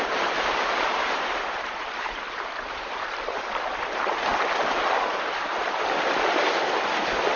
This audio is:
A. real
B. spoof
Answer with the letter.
B